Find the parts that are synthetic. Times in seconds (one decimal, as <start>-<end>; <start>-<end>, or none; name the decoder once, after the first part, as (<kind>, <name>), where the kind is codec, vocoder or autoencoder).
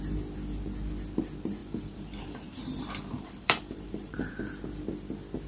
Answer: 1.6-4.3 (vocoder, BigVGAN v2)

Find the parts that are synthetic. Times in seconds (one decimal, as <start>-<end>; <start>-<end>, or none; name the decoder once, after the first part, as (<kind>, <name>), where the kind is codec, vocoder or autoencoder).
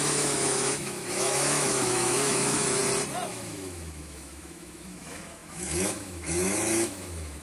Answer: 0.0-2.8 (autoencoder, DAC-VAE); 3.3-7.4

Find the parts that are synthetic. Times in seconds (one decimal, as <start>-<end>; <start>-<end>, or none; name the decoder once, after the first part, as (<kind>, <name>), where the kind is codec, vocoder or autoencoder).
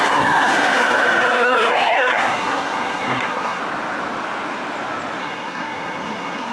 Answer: 0.0-3.6 (codec, SNAC); 5.2-6.5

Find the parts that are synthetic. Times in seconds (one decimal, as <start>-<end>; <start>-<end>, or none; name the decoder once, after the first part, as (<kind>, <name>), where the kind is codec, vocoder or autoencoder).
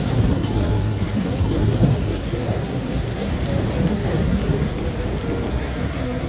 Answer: 0.0-3.3 (codec, SNAC); 3.9-4.8; 5.5-6.3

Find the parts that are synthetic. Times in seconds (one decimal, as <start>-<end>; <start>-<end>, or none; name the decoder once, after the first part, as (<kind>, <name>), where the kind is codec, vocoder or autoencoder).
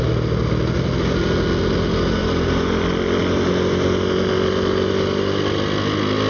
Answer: 2.2-3.2 (vocoder, BigVGAN v2)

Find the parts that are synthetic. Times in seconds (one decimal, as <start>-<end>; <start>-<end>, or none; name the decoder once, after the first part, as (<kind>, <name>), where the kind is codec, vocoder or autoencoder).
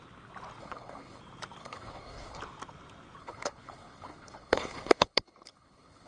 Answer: 0.6-1.2 (codec, HILCodec); 1.6-2.4; 3.2-6.1